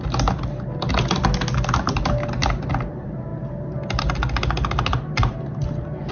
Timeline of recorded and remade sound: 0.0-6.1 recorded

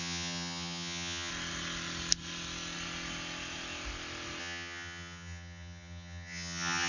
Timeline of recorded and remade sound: 0.0-1.3 remade; 1.3-4.4 recorded; 4.4-6.9 remade

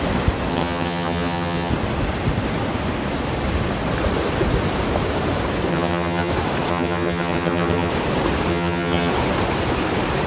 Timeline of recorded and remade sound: 0.0-0.5 recorded; 0.5-1.7 remade; 1.7-5.7 recorded; 5.7-6.3 remade; 6.3-6.7 recorded; 6.7-7.9 remade; 7.9-8.5 recorded; 8.5-9.1 remade; 9.1-10.3 recorded